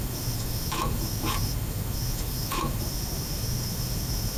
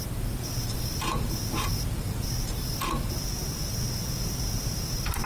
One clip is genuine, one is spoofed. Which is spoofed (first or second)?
first